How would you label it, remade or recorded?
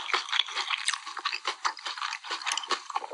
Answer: recorded